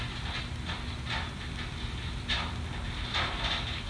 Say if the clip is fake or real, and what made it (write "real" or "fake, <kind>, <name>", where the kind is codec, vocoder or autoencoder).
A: real